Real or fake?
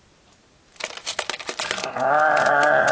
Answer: real